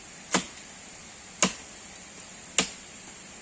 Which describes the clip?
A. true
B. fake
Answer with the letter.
A